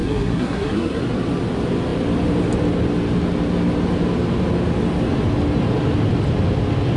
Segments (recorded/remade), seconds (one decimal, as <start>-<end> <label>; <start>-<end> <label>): 0.0-1.0 remade; 1.0-7.0 recorded